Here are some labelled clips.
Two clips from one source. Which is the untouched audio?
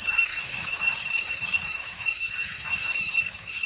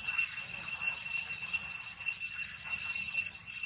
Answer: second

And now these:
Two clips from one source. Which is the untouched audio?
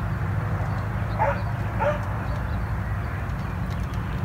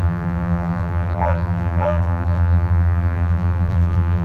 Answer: first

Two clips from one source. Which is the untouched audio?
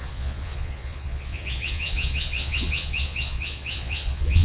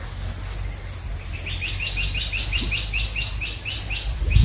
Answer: second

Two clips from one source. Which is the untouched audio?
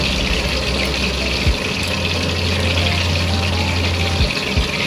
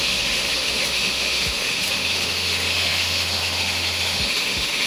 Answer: first